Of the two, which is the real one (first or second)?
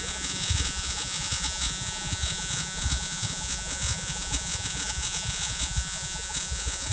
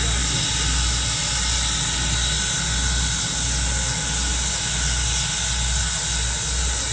second